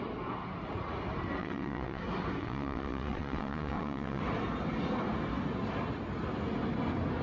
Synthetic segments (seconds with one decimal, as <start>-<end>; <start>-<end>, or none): 1.4-2.0; 2.4-4.2